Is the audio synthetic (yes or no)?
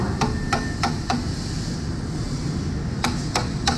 no